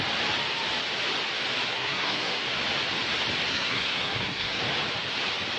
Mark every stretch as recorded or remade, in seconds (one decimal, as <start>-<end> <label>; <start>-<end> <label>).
0.0-1.7 recorded; 1.7-2.4 remade; 2.4-3.5 recorded; 3.5-4.6 remade; 4.6-5.6 recorded